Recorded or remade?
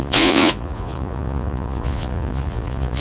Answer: remade